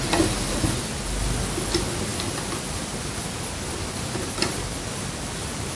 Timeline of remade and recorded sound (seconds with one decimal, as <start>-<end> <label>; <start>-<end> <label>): 0.0-5.7 recorded